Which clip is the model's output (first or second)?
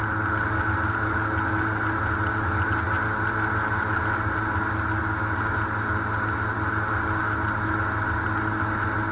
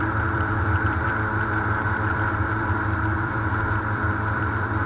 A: second